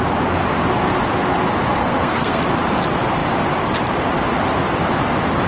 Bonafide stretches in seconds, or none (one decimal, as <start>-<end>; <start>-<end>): 0.0-1.8; 2.4-5.5